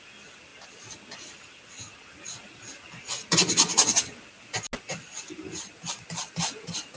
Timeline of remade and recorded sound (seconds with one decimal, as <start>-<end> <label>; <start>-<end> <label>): 0.0-7.0 recorded